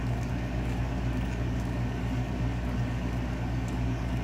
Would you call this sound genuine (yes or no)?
no